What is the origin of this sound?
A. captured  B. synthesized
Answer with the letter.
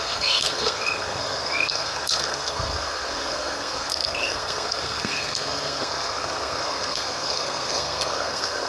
B